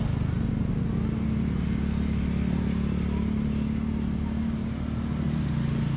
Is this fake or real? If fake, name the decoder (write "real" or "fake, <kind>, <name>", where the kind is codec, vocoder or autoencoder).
real